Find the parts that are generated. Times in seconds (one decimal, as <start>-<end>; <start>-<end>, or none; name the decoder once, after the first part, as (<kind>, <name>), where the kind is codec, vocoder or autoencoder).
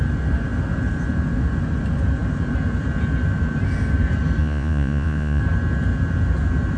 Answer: 4.4-5.4 (vocoder, Vocos)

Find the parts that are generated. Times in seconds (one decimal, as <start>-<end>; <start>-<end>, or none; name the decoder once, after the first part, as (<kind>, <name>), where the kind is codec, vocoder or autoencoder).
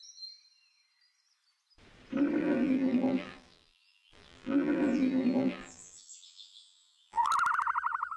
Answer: 2.4-7.3 (vocoder, BigVGAN v2)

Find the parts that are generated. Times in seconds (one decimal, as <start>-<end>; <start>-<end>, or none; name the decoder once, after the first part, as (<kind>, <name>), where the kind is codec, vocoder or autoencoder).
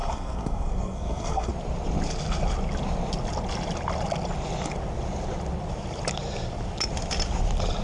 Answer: 0.0-1.5 (codec, SNAC)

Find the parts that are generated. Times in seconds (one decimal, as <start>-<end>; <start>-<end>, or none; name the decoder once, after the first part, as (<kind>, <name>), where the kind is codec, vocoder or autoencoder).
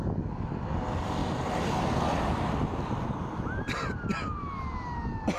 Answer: none